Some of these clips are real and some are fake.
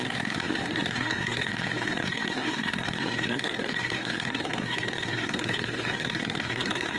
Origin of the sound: fake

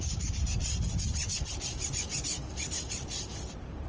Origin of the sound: real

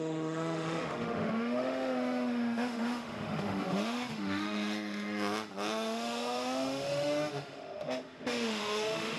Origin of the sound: fake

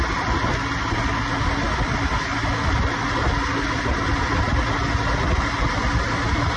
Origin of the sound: real